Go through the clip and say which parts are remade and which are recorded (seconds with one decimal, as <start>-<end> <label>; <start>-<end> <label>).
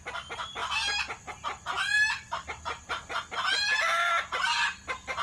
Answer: 0.0-5.2 recorded